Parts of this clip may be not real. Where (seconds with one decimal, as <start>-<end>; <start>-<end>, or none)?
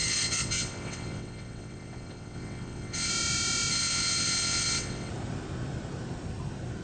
0.0-3.1; 3.7-5.1